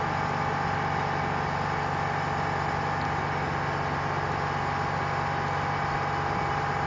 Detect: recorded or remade recorded